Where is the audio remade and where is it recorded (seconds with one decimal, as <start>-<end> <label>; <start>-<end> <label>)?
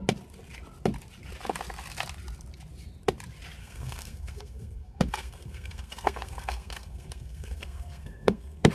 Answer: 0.0-3.6 recorded; 3.6-8.7 remade